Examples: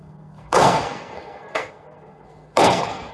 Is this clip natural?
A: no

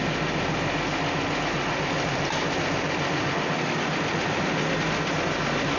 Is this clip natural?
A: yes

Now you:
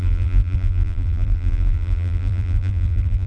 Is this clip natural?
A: no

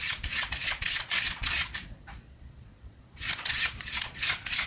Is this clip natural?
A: no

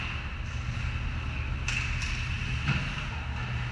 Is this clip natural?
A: yes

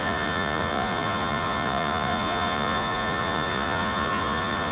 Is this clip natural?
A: no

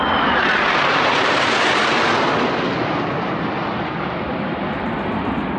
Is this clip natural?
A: yes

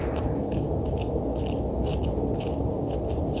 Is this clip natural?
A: yes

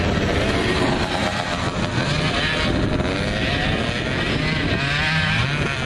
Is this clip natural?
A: yes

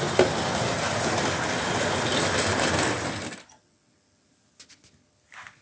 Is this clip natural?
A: yes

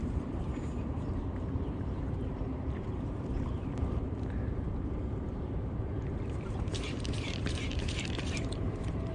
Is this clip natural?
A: no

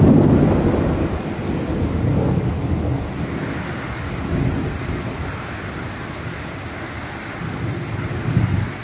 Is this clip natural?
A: yes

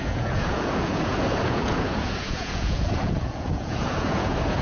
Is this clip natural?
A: no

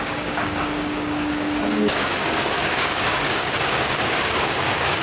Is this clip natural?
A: no